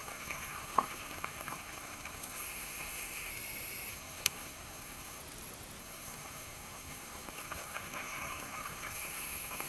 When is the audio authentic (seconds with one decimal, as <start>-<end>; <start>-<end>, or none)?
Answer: 3.3-3.9; 5.2-5.8